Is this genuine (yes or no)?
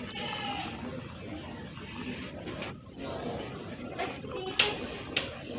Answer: yes